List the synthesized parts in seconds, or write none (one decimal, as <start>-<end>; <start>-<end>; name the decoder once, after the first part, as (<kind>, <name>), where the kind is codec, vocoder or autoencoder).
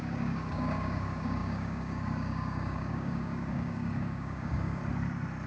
0.0-4.8 (codec, DAC)